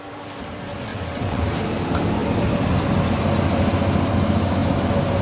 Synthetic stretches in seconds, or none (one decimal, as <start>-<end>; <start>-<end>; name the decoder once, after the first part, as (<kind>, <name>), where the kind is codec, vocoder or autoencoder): 0.9-1.4 (vocoder, WaveNeXt)